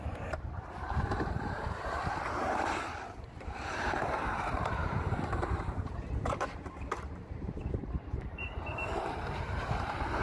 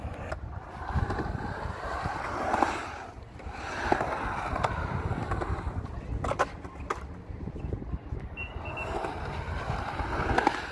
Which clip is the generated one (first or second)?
first